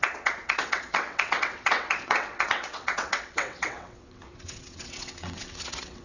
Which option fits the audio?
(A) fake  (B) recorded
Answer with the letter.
A